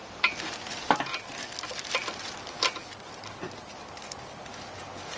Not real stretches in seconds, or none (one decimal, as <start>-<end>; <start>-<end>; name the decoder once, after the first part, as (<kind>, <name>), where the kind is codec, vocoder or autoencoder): none